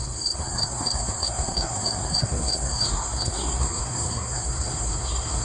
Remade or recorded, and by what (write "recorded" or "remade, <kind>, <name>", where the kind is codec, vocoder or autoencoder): remade, codec, SNAC